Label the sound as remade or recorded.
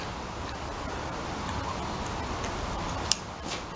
recorded